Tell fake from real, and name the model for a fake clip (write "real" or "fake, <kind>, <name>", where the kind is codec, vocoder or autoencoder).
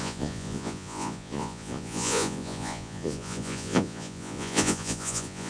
fake, vocoder, Vocos